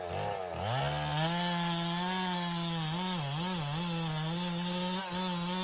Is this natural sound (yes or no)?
yes